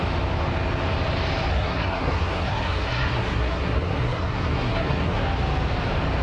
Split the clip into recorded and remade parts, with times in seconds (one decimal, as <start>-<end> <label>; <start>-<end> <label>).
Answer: 0.0-1.5 recorded; 1.5-5.2 remade; 5.2-6.2 recorded